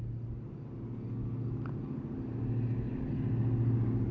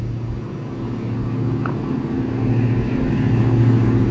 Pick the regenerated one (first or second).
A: second